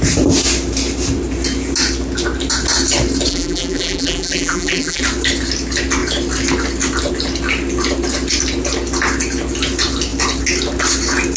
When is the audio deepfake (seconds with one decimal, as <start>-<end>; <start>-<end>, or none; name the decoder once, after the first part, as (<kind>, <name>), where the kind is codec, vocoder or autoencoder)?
3.3-5.0 (vocoder, BigVGAN v2)